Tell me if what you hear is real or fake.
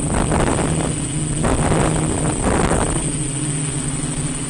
real